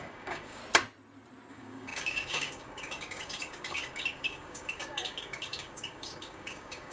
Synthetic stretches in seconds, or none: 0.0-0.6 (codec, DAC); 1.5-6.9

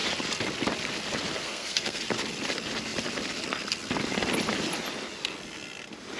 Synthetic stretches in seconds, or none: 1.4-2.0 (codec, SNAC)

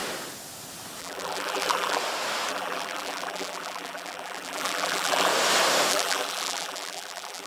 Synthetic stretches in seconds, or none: 1.0-2.0 (vocoder, BigVGAN v2); 2.5-5.3; 5.9-7.5

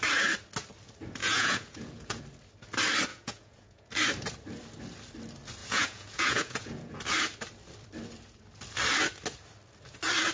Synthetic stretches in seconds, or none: 1.2-2.2 (vocoder, Vocos); 3.1-3.9; 5.6-7.0

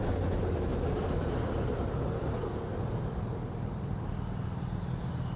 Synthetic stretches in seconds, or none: none

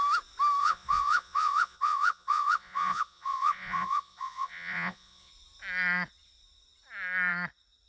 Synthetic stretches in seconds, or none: 0.6-5.3 (vocoder, Vocos)

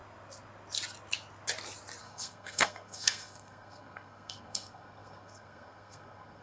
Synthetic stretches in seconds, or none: 2.0-6.4 (codec, SNAC)

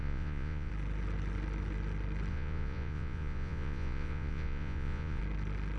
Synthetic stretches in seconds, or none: 0.0-0.7 (vocoder, Vocos); 2.3-5.2